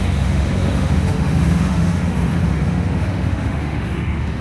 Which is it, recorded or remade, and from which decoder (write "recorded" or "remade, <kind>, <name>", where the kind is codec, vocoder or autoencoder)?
remade, autoencoder, DAC-VAE